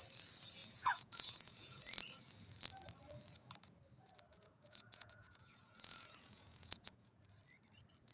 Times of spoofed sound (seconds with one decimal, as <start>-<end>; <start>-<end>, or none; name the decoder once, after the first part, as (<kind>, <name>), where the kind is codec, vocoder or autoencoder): 0.6-1.8 (vocoder, Vocos); 4.3-7.2